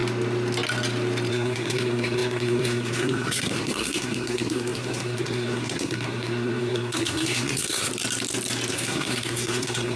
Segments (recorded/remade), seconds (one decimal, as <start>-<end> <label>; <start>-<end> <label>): 0.0-1.3 recorded; 1.3-7.9 remade; 7.9-8.7 recorded; 8.7-10.0 remade